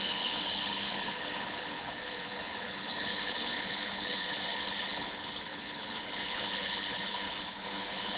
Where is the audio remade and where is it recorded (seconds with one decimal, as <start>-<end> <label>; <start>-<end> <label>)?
0.0-8.2 remade